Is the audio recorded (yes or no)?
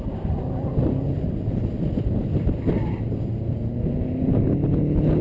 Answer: yes